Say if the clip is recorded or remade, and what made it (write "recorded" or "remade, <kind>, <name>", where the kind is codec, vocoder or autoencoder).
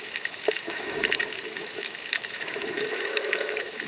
remade, autoencoder, DAC-VAE